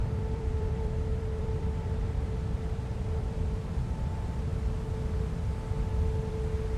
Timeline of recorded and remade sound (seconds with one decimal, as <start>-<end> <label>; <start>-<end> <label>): 0.0-3.6 remade; 3.6-6.8 recorded